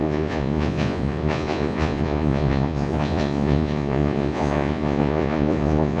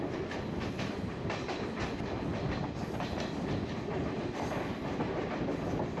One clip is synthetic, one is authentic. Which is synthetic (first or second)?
first